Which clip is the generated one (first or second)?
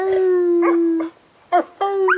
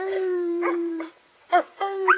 second